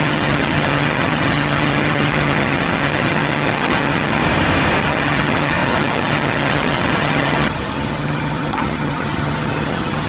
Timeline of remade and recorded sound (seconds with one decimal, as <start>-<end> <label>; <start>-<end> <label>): 0.0-4.2 remade; 4.2-4.8 recorded; 4.8-10.1 remade

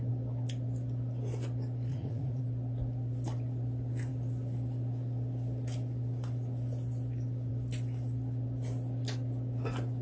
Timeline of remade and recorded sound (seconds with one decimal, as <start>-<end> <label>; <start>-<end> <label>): 0.0-1.9 recorded; 1.9-2.4 remade; 2.4-10.0 recorded

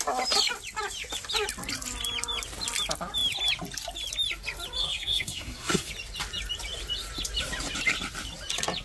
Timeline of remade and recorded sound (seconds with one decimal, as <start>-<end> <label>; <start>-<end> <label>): 0.0-4.8 recorded; 4.8-5.9 remade; 5.9-8.8 recorded

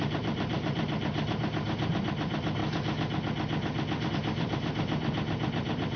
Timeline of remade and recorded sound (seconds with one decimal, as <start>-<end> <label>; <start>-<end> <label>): 0.0-2.6 remade; 2.6-4.1 recorded; 4.1-6.0 remade

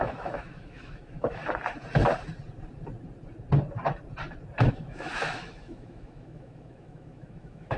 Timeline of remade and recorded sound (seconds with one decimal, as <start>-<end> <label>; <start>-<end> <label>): 0.0-1.4 remade; 1.4-4.7 recorded; 4.7-7.8 remade

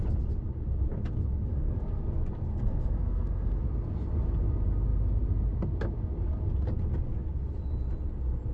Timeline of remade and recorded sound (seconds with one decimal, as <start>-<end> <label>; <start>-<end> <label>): 0.0-1.5 recorded; 1.5-2.0 remade; 2.0-2.5 recorded; 2.5-3.6 remade; 3.6-8.5 recorded

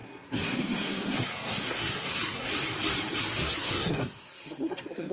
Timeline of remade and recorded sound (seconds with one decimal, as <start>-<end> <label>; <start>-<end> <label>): 0.0-2.5 remade; 2.5-3.2 recorded; 3.2-5.1 remade